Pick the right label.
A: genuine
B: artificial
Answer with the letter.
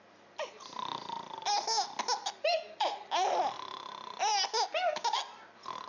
A